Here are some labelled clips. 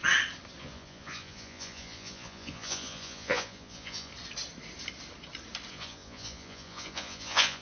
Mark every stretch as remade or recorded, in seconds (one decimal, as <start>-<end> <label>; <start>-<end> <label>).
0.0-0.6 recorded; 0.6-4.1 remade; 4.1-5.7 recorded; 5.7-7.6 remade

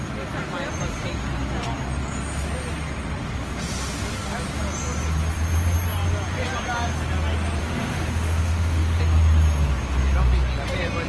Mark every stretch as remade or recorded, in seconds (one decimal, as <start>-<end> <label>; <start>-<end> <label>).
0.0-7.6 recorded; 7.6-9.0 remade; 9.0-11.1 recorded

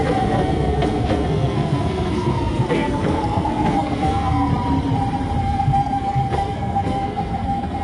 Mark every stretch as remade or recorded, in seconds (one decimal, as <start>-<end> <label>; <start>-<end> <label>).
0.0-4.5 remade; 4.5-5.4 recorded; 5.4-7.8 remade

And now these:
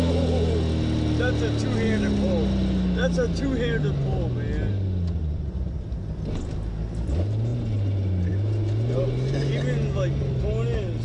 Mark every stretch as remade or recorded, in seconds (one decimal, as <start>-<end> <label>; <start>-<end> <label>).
0.0-11.0 recorded